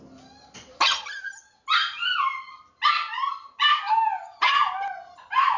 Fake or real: real